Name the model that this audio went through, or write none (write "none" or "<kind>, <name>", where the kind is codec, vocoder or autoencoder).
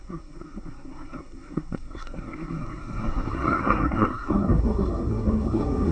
codec, SNAC